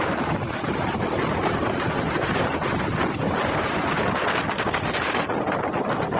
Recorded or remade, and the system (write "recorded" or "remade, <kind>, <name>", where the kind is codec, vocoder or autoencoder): recorded